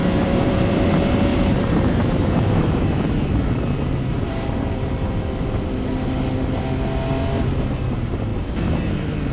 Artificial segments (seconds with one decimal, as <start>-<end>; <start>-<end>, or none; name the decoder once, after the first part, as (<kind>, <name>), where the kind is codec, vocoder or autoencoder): 0.0-0.9 (vocoder, BigVGAN v2); 1.3-5.1; 8.3-9.3